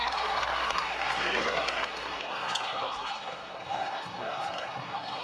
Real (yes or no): no